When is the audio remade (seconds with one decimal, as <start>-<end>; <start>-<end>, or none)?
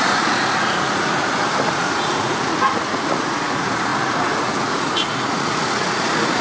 0.0-6.4